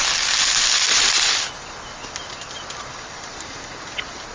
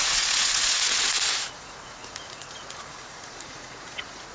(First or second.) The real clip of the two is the first